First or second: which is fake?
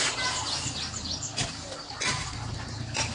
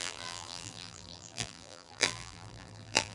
second